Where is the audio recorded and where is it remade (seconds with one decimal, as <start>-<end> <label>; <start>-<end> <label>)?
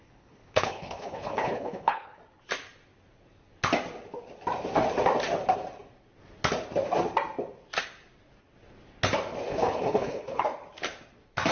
0.0-2.2 remade; 2.2-9.5 recorded; 9.5-10.4 remade; 10.4-11.5 recorded